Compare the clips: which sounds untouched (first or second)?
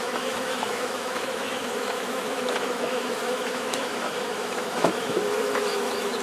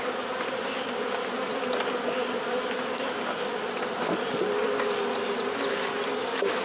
second